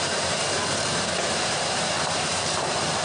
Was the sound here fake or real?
fake